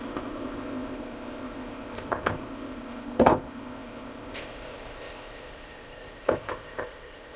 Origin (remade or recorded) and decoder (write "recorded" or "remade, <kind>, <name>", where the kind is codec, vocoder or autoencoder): remade, codec, ZipCodec